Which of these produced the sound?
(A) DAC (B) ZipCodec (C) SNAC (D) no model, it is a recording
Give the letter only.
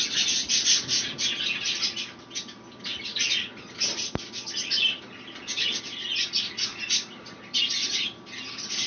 D